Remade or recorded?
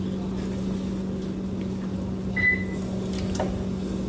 recorded